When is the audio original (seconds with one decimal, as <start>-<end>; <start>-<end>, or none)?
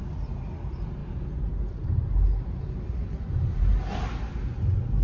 0.0-5.0